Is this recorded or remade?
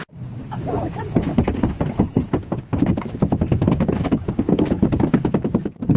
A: remade